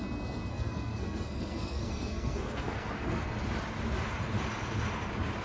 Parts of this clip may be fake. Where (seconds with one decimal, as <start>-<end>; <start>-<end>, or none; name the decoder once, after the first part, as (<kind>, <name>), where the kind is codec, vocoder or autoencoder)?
0.5-3.3 (codec, SNAC)

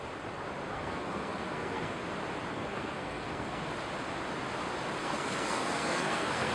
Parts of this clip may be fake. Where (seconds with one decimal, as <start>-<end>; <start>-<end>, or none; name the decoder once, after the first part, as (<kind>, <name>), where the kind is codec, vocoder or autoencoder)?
0.7-2.0 (codec, SNAC); 2.5-3.7; 5.0-6.5

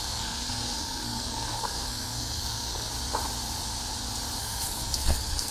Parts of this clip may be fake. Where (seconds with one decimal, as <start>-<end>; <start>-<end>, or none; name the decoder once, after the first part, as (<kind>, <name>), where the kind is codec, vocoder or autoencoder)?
0.0-2.9 (codec, SNAC); 4.4-5.5

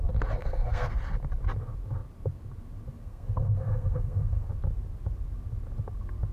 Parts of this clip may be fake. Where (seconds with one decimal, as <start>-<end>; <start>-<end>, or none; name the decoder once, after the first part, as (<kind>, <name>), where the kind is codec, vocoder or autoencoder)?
0.4-0.9 (codec, SNAC); 3.0-4.5

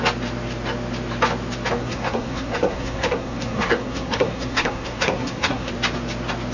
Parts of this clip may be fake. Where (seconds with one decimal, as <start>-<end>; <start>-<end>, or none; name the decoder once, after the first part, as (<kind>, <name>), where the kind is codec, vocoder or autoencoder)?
1.8-5.7 (codec, SNAC)

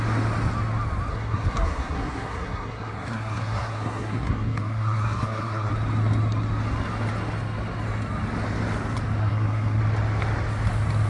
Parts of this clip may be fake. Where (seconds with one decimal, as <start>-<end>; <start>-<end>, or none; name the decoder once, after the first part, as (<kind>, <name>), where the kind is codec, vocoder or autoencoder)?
1.1-5.7 (codec, SNAC); 9.2-9.8

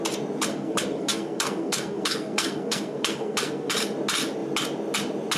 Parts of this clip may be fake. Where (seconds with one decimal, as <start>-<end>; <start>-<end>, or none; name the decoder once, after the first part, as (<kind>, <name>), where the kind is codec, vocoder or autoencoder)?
0.5-3.7 (codec, SNAC)

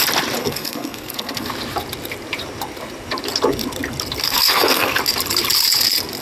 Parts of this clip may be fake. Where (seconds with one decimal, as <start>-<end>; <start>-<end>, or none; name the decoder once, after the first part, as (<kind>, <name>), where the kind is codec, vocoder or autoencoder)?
0.4-1.5 (codec, SNAC); 4.3-5.0